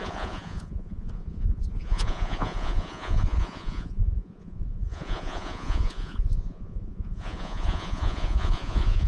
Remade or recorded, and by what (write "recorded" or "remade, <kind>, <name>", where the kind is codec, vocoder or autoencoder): remade, vocoder, Vocos